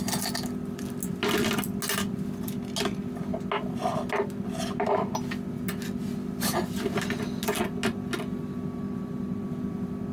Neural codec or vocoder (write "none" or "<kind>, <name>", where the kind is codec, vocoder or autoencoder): none